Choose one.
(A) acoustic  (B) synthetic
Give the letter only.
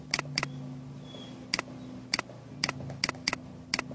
A